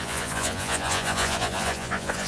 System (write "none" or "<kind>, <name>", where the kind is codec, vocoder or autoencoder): vocoder, Vocos